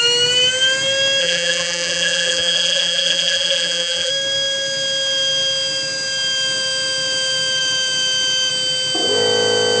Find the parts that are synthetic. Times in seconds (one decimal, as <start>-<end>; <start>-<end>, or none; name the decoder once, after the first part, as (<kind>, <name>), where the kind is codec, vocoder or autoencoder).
1.2-4.1 (vocoder, BigVGAN v2)